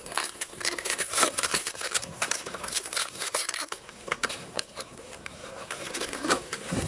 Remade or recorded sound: remade